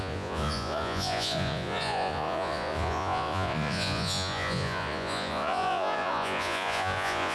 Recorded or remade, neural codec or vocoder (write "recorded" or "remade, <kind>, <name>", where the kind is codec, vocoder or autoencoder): remade, vocoder, Vocos